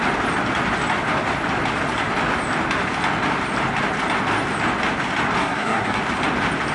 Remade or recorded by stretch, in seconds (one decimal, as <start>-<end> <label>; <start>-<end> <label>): 0.0-5.4 recorded; 5.4-6.0 remade; 6.0-6.7 recorded